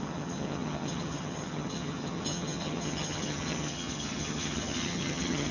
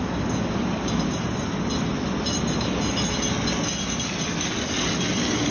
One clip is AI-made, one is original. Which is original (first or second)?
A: second